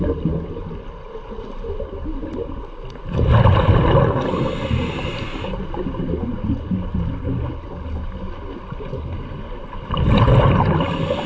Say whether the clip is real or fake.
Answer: real